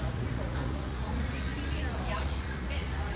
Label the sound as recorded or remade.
remade